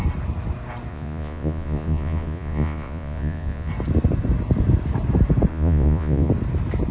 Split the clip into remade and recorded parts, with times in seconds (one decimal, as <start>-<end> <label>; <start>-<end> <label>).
0.0-0.9 recorded; 0.9-3.7 remade; 3.7-5.5 recorded; 5.5-6.3 remade; 6.3-6.9 recorded